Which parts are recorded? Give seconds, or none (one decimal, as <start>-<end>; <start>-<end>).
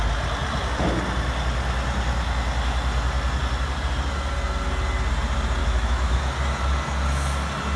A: 0.0-5.6; 6.2-7.8